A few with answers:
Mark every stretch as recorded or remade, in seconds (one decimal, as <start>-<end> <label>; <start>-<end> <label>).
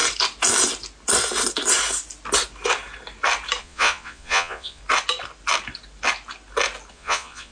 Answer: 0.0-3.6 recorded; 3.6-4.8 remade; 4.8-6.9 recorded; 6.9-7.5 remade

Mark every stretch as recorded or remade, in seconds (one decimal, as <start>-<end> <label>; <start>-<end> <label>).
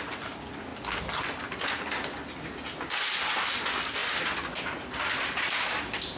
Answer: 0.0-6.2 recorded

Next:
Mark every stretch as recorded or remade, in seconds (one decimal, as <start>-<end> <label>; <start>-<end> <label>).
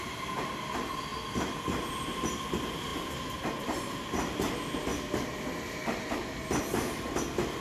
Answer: 0.0-7.6 recorded